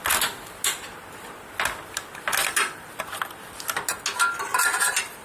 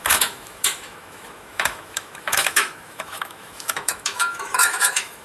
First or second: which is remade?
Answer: second